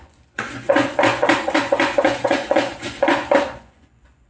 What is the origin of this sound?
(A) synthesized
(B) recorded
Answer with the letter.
A